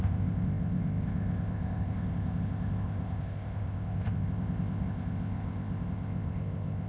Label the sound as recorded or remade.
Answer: remade